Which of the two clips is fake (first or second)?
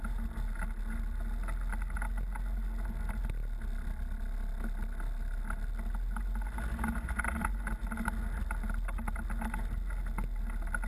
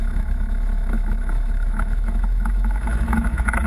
second